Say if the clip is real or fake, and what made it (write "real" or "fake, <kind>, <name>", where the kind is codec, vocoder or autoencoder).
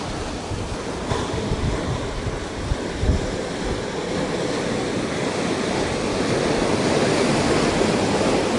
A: real